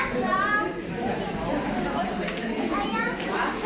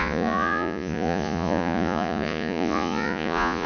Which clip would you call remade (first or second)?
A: second